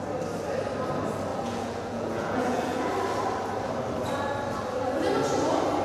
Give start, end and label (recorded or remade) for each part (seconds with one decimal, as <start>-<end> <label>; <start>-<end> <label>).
0.0-1.3 recorded; 1.3-2.9 remade; 2.9-5.8 recorded